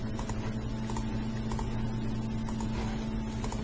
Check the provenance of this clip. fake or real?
real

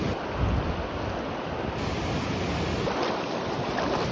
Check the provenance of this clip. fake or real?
real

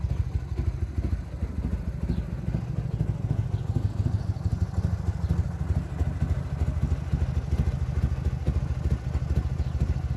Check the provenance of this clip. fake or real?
real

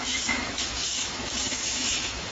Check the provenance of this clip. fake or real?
fake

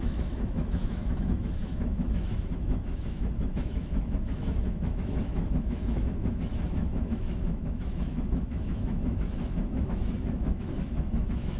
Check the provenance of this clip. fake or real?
fake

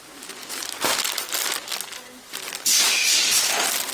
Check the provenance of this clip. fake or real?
real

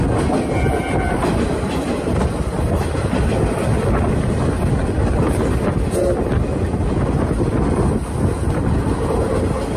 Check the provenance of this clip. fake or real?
real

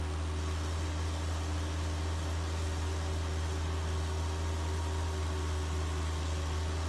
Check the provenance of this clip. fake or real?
real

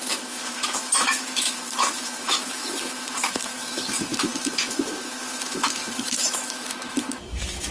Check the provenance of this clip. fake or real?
fake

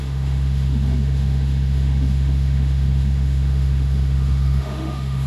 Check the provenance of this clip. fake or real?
fake